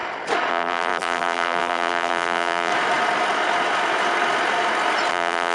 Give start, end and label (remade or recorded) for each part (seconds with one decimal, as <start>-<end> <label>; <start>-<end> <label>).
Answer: 0.0-0.5 recorded; 0.5-2.7 remade; 2.7-5.1 recorded; 5.1-5.5 remade